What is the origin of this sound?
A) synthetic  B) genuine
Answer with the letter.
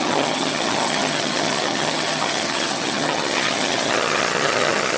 A